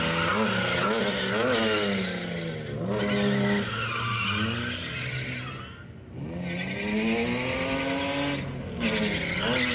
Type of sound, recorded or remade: recorded